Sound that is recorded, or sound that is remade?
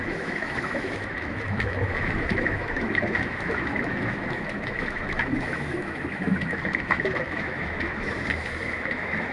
remade